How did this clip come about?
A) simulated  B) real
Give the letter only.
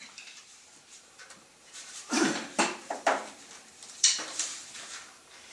A